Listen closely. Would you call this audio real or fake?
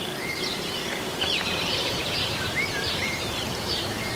fake